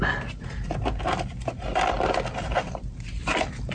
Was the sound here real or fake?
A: real